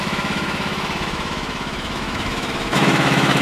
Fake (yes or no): yes